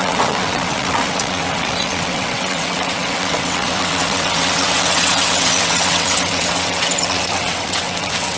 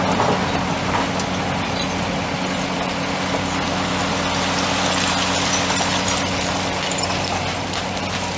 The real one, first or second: second